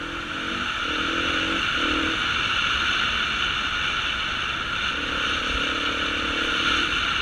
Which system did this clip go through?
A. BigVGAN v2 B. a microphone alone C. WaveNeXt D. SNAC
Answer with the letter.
B